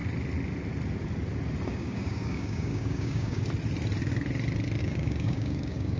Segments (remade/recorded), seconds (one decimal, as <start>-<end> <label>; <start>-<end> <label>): 0.0-1.7 recorded; 1.7-3.4 remade; 3.4-4.8 recorded; 4.8-6.0 remade

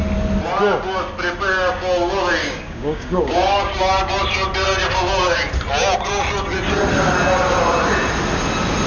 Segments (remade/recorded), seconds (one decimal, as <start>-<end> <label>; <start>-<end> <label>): 0.0-2.4 recorded; 2.4-3.7 remade; 3.7-8.9 recorded

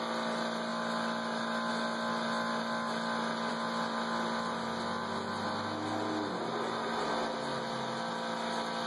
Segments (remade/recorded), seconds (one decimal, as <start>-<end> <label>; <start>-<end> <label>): 0.0-8.9 recorded

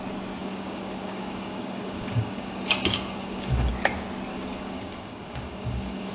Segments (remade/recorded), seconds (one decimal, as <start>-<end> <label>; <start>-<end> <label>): 0.0-0.4 recorded; 0.4-3.7 remade; 3.7-4.3 recorded; 4.3-6.1 remade

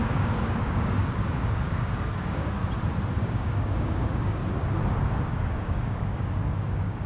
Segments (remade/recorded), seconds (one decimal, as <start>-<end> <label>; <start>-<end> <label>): 0.0-2.6 remade; 2.6-3.2 recorded; 3.2-4.4 remade; 4.4-5.0 recorded; 5.0-7.1 remade

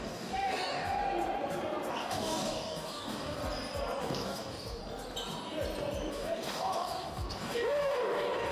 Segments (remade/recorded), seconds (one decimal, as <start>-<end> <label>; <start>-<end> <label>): 0.0-1.0 remade; 1.0-1.9 recorded; 1.9-3.4 remade; 3.4-4.0 recorded; 4.0-4.8 remade; 4.8-6.1 recorded; 6.1-8.5 remade

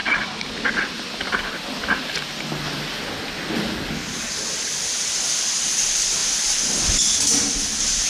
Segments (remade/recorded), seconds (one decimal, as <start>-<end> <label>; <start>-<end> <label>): 0.0-8.1 recorded